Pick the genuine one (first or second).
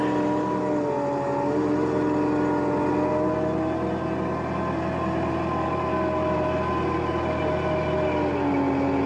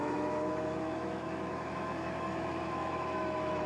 first